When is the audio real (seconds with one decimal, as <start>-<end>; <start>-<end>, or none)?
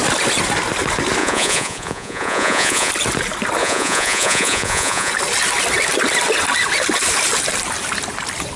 0.0-1.2; 2.9-3.6; 5.1-8.6